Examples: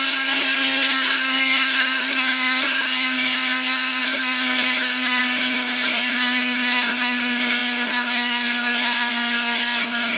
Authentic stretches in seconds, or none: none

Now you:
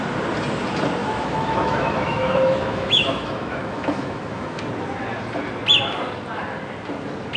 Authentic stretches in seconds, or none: 0.0-1.0; 4.6-7.4

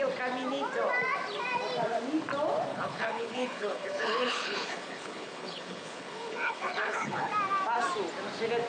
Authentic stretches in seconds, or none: 0.0-2.7; 7.3-8.7

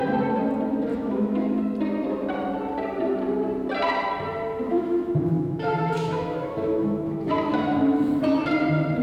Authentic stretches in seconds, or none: 0.0-0.9; 1.6-4.7; 8.6-9.0

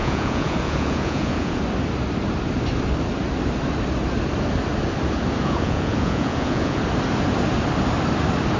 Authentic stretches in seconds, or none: 1.6-5.4; 6.8-8.6

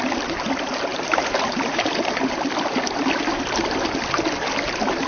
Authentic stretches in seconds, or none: 0.0-0.9; 2.1-5.1

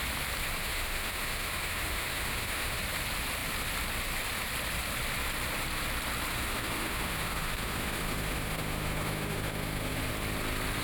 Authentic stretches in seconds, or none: 0.0-0.6; 2.8-6.3; 10.1-10.8

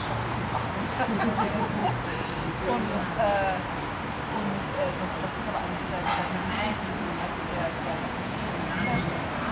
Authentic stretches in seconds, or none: 0.0-7.5; 8.7-9.5